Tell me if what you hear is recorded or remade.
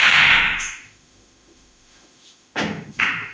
remade